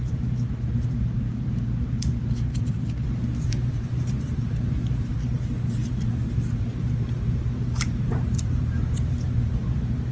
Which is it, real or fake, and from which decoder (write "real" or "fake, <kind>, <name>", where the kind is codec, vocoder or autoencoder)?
fake, vocoder, BigVGAN v2